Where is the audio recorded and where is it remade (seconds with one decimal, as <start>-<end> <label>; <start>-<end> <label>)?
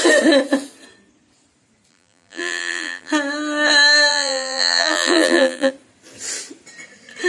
0.0-1.9 recorded; 1.9-3.1 remade; 3.1-4.1 recorded; 4.1-5.7 remade; 5.7-7.3 recorded